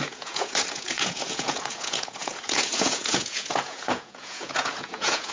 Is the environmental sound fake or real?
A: fake